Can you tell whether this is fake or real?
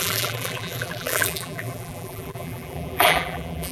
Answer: fake